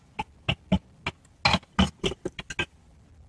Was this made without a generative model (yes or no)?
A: yes